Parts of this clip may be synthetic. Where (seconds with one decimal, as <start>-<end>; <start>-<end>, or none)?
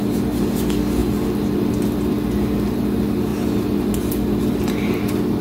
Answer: none